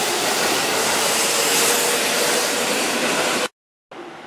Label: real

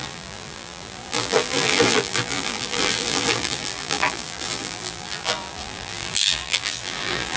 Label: fake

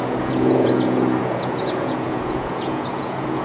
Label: fake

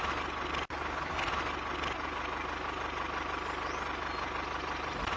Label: real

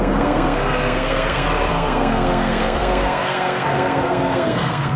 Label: fake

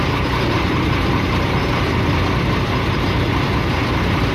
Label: real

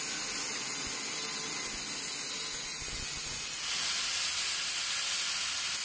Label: real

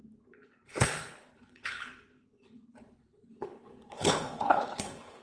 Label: fake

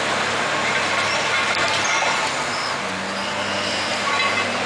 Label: real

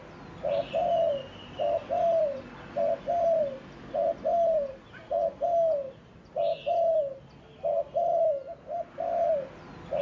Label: real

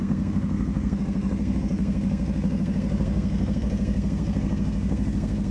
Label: fake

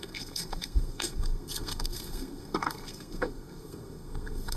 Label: fake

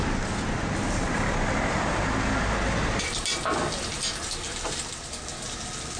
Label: real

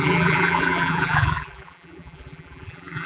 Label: fake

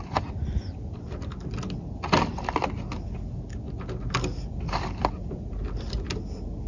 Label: real